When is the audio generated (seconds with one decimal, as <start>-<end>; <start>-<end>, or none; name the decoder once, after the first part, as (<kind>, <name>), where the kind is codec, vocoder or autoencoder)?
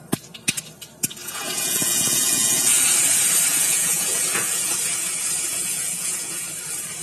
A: 1.2-2.8 (vocoder, Vocos); 3.5-4.7; 5.5-6.4